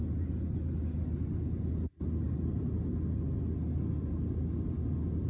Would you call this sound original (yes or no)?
yes